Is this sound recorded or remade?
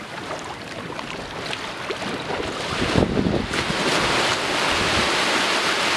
recorded